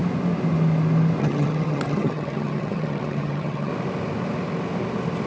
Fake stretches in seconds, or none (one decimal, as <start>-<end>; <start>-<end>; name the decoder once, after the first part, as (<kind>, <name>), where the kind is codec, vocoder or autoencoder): 1.2-3.7 (vocoder, HiFi-GAN)

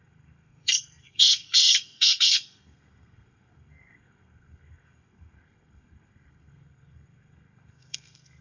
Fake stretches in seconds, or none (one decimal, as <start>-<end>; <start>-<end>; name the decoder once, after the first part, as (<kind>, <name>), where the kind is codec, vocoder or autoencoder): 0.0-8.4 (codec, SNAC)

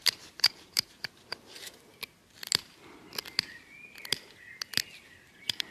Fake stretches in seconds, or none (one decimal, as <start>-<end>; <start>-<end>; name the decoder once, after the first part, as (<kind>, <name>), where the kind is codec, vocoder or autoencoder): 0.0-1.9 (vocoder, BigVGAN v2); 5.3-5.7

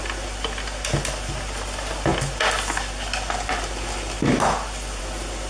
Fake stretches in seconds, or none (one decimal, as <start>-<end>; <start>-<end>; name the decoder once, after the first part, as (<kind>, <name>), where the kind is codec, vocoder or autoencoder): none